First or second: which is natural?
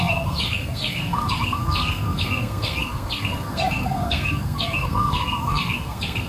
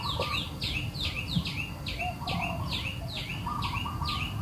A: second